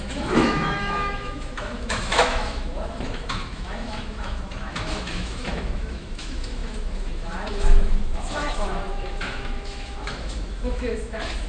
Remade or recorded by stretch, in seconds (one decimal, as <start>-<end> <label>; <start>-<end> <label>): 0.0-11.5 remade